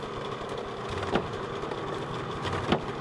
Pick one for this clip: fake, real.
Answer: real